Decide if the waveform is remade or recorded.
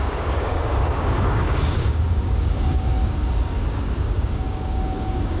remade